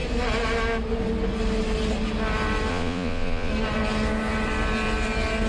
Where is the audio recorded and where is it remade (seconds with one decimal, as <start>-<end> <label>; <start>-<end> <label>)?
0.0-2.7 recorded; 2.7-3.5 remade; 3.5-5.5 recorded